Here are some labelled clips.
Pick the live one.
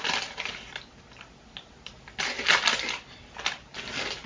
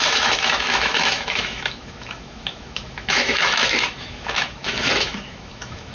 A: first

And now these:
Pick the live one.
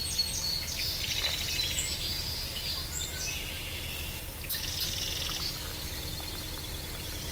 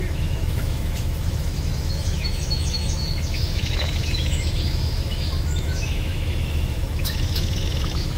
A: first